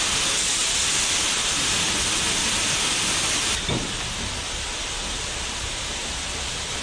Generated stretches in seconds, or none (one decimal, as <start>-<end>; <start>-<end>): 0.0-0.6; 4.7-6.8